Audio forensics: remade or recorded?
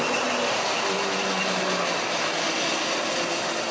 recorded